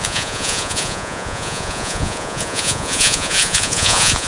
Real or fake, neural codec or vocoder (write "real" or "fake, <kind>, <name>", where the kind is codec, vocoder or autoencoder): fake, vocoder, Vocos